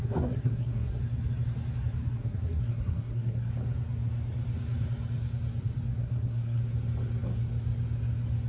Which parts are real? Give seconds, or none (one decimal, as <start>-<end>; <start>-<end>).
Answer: 1.0-2.2; 3.5-6.0; 6.6-8.5